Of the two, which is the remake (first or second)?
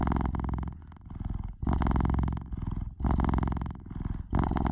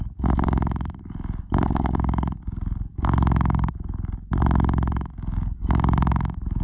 second